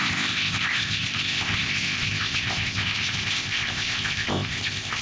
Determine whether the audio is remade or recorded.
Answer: remade